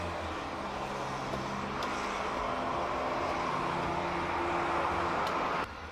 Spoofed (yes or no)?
no